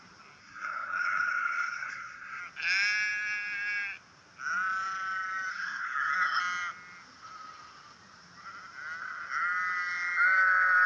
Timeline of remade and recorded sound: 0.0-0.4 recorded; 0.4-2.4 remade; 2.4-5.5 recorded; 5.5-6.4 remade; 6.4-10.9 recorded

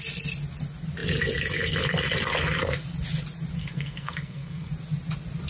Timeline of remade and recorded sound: 0.0-3.6 recorded; 3.6-4.7 remade; 4.7-5.5 recorded

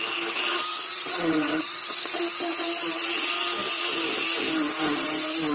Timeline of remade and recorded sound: 0.0-0.7 recorded; 0.7-2.2 remade; 2.2-5.5 recorded